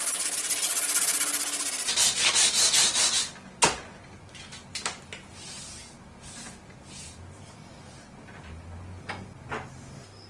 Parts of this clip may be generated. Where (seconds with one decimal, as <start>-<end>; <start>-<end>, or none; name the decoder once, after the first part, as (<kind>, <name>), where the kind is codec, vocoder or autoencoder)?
none

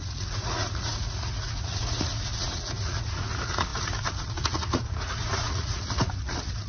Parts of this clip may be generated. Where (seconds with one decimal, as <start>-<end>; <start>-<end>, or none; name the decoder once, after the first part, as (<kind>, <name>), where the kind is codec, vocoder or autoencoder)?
0.0-6.7 (vocoder, Vocos)

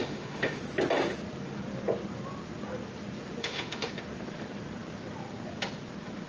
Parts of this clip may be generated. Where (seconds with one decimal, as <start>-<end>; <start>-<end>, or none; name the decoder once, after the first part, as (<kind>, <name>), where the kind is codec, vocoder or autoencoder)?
0.0-0.6 (autoencoder, DAC-VAE); 3.4-3.9

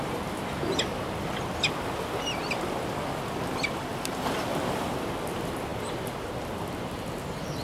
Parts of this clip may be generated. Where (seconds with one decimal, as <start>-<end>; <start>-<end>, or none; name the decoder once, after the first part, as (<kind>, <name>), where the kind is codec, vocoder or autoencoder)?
none

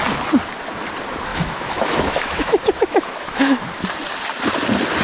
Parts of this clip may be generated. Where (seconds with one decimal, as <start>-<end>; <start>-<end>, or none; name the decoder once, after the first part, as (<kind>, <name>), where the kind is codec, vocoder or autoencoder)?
1.3-3.7 (autoencoder, DAC-VAE)